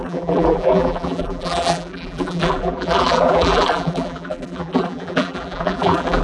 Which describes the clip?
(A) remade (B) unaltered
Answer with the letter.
A